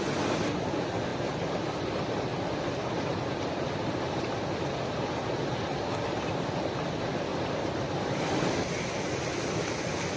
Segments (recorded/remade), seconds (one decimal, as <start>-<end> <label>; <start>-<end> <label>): 0.0-1.1 recorded; 1.1-4.3 remade; 4.3-7.3 recorded; 7.3-8.4 remade; 8.4-10.2 recorded